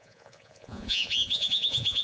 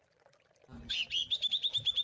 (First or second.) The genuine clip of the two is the second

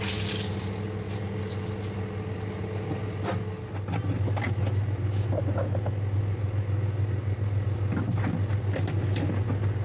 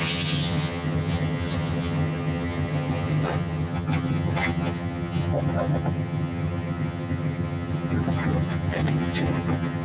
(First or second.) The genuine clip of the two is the first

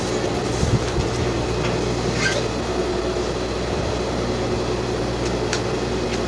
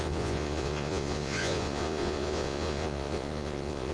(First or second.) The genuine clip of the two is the first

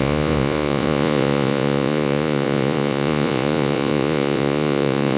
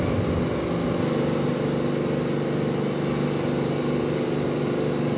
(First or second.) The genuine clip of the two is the second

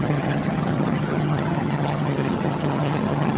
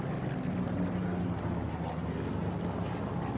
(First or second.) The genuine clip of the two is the second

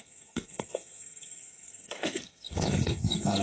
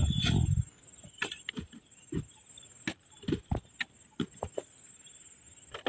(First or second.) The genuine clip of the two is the second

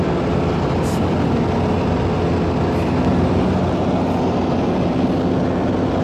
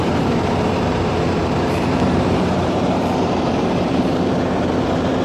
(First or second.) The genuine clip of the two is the first